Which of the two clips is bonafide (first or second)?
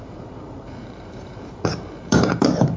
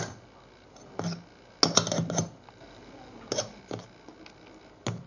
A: second